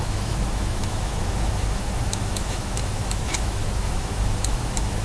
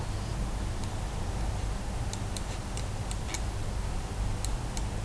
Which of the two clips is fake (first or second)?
first